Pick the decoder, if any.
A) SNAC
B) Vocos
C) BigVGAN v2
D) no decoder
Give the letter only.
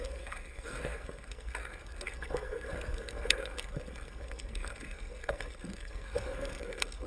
A